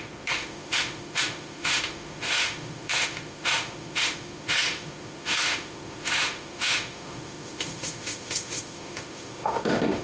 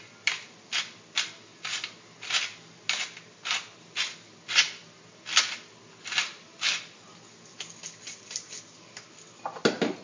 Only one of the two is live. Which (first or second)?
second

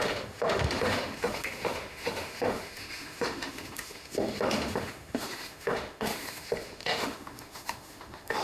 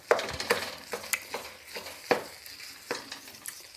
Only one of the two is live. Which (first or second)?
second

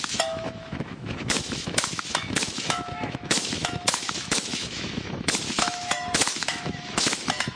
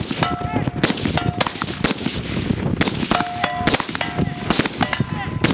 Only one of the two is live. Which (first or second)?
second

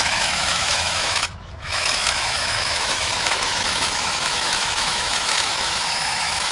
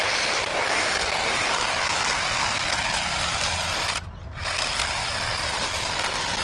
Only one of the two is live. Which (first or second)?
second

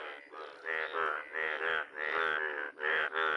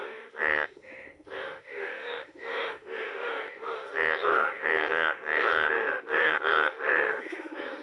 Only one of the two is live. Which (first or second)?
first